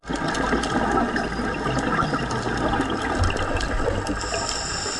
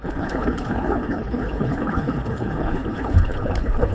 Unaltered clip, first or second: first